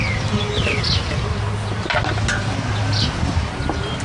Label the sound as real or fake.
real